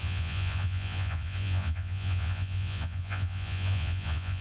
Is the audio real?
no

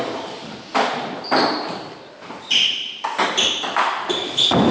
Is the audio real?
yes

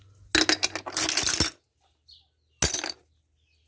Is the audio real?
yes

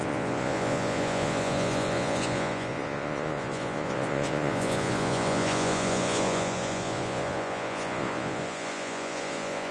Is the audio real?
no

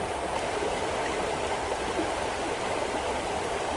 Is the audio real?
yes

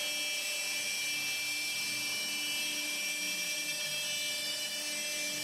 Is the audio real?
yes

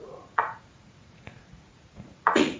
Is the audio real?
no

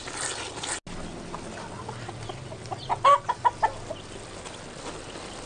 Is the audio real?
yes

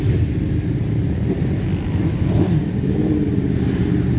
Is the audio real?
yes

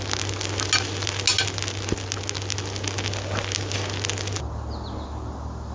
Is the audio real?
yes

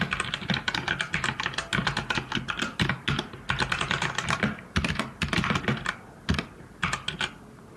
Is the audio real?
yes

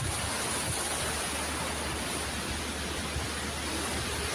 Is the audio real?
yes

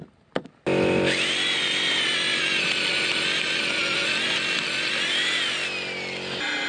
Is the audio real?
yes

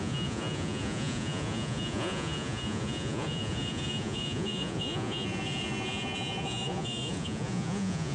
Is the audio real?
no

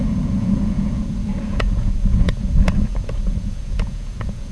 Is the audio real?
no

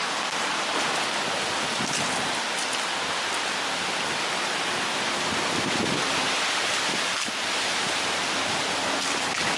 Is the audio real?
yes